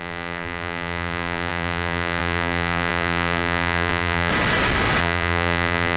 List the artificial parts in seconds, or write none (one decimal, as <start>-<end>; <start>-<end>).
0.0-4.3; 5.0-6.0